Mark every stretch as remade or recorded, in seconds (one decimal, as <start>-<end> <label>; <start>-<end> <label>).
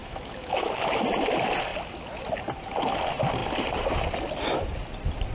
0.0-1.0 remade; 1.0-5.3 recorded